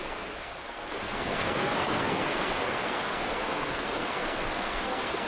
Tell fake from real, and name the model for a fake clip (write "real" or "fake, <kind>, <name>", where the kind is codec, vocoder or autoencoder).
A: fake, codec, SNAC